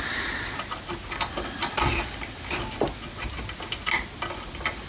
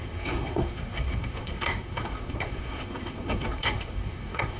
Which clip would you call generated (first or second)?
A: second